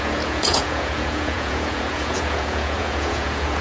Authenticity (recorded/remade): remade